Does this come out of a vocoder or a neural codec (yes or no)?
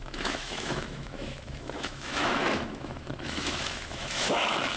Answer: yes